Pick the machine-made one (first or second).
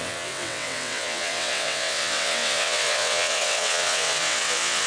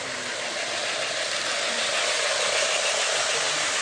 first